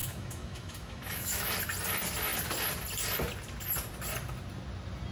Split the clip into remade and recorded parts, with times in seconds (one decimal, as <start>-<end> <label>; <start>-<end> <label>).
0.0-1.5 remade; 1.5-5.1 recorded